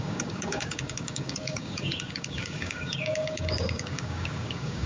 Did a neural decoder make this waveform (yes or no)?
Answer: yes